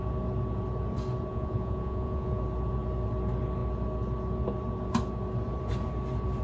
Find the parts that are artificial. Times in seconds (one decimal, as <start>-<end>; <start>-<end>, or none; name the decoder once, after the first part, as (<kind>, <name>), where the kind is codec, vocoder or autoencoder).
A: 1.3-2.4 (vocoder, Vocos)